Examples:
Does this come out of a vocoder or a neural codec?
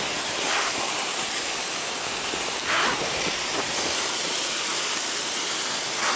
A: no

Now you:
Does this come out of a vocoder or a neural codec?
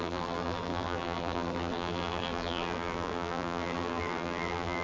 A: yes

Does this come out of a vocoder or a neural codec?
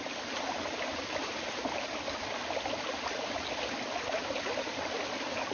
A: no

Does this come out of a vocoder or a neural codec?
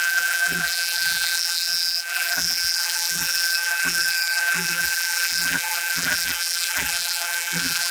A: yes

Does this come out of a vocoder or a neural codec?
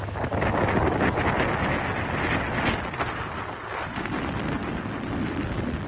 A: no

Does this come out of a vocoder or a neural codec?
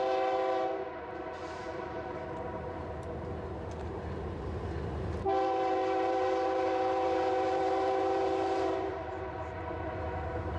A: yes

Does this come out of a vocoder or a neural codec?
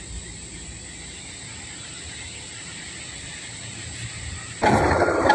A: yes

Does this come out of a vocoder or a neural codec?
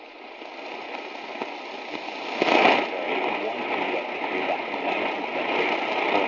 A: no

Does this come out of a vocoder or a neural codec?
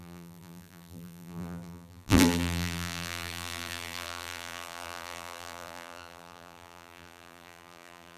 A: yes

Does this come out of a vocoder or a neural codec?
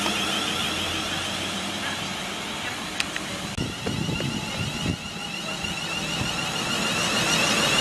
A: no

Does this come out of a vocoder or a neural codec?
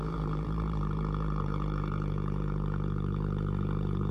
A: yes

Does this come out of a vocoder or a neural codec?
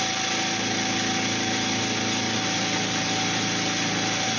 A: no